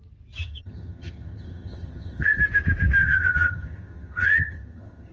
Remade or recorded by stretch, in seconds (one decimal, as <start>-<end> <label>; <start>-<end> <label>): 0.0-0.4 recorded; 0.4-2.4 remade; 2.4-3.0 recorded; 3.0-5.1 remade